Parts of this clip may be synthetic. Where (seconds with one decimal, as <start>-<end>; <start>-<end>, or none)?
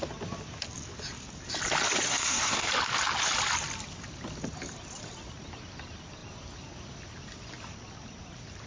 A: 2.1-2.7